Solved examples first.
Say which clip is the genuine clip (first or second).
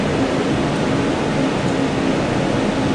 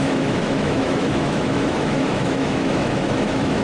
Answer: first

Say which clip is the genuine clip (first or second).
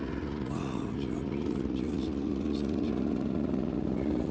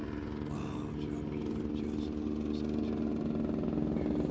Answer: second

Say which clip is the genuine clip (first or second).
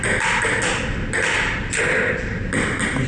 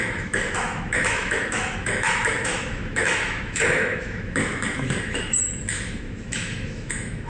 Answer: first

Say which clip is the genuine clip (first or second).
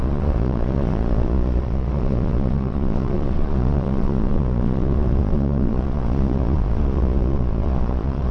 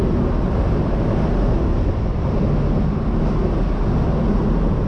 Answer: second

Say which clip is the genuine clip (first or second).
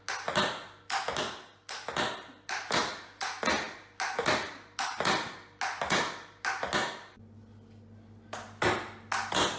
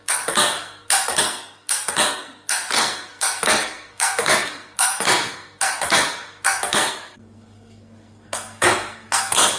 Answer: first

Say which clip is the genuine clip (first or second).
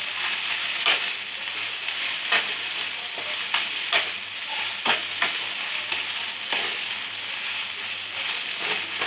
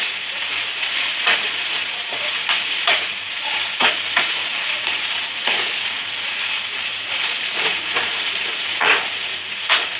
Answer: first